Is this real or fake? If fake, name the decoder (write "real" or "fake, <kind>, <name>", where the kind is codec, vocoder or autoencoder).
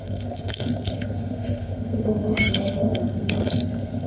fake, codec, SNAC